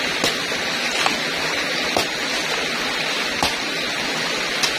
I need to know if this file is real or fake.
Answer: real